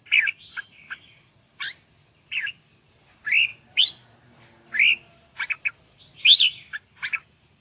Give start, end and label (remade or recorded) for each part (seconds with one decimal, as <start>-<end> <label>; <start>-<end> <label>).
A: 0.0-7.6 recorded